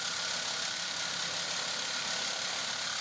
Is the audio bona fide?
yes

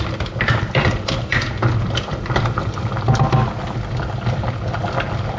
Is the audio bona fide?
yes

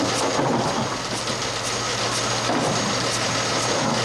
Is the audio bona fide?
yes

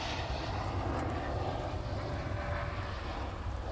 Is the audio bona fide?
yes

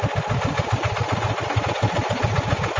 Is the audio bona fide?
yes